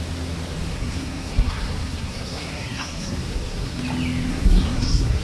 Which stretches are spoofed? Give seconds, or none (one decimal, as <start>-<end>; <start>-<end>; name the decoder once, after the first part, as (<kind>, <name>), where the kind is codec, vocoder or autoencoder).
0.7-3.8 (codec, SNAC); 4.3-5.2